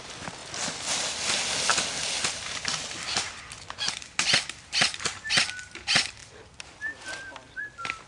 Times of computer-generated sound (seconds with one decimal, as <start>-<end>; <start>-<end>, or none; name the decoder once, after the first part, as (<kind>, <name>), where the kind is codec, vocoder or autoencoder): 2.7-5.3 (vocoder, BigVGAN v2); 6.2-7.6